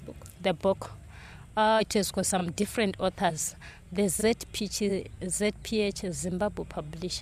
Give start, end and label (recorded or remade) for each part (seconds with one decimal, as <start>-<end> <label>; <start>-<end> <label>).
0.0-0.6 remade; 0.6-1.8 recorded; 1.8-4.2 remade; 4.2-4.9 recorded; 4.9-7.2 remade